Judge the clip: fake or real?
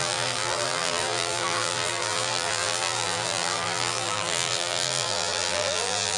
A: fake